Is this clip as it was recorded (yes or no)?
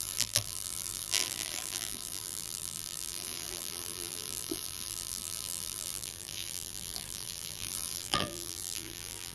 no